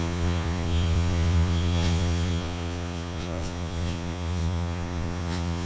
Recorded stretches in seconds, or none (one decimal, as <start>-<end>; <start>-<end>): none